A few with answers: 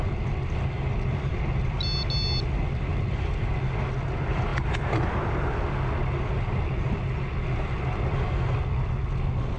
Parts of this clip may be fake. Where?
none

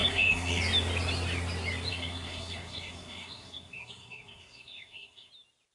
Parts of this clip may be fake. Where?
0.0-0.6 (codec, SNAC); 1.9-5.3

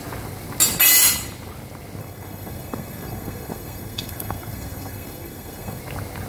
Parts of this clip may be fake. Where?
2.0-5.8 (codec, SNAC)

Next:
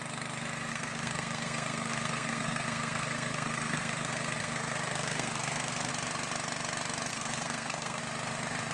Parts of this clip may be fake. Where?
0.7-5.9 (codec, SNAC); 7.1-8.0

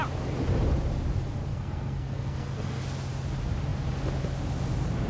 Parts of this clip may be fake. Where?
1.5-2.8 (codec, SNAC)

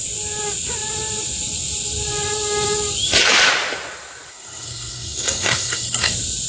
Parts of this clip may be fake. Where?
4.3-6.1 (codec, SNAC)

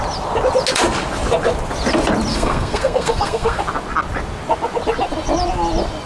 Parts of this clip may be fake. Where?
2.3-3.6 (codec, SNAC)